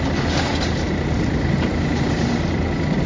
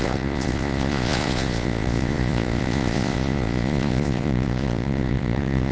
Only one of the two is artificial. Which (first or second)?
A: second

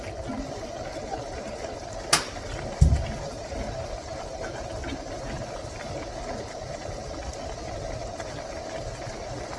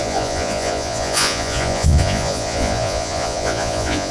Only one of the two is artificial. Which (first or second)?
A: second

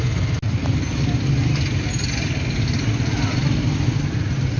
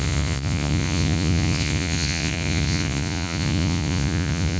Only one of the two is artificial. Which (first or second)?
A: second